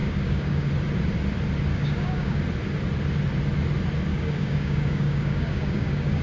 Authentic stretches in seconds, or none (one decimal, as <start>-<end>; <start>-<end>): 0.7-1.7; 2.4-4.1

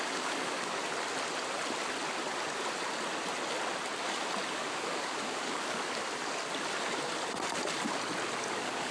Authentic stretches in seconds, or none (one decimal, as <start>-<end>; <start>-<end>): 0.8-4.5; 6.0-8.5

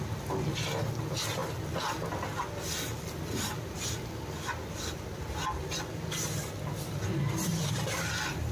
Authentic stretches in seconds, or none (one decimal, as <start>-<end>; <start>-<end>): 0.0-8.5

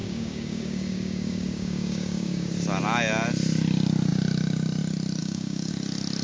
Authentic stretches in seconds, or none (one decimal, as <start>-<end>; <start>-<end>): 2.5-5.2; 5.7-6.2

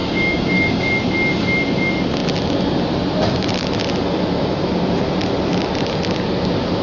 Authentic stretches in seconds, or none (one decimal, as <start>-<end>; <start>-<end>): 0.9-6.8

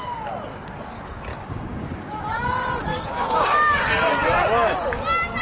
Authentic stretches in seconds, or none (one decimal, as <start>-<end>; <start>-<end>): 0.0-1.3; 2.2-2.9; 3.9-5.4

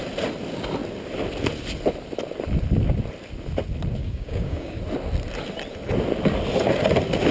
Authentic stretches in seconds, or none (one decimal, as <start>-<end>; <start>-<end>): 0.0-4.0; 4.8-7.3